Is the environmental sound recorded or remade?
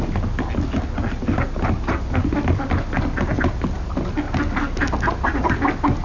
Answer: recorded